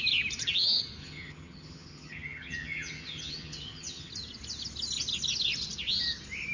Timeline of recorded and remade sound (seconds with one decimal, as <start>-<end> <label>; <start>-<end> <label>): 0.0-1.0 recorded; 1.0-4.1 remade; 4.1-6.5 recorded